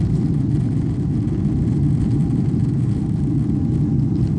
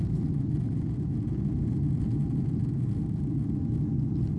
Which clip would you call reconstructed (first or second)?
first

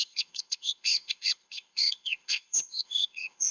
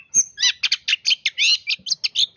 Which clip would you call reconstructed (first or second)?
first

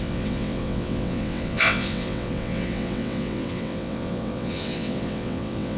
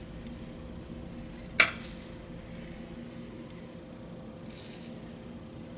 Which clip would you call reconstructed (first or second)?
first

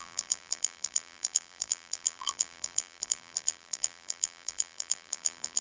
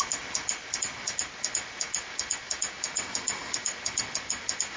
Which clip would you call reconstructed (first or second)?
first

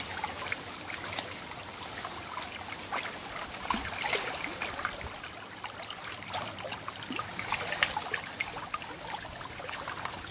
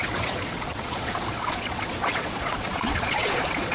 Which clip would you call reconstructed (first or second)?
second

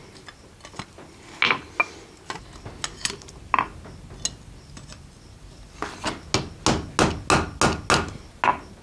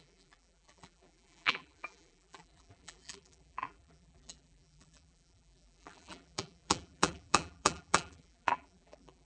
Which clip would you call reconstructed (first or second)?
second